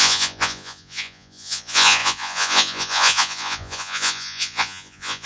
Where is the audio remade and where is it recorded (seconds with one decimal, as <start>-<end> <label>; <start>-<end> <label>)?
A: 0.0-5.3 remade